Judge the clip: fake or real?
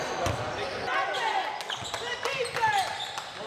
fake